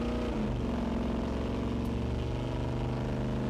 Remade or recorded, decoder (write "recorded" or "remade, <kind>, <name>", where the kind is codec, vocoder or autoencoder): recorded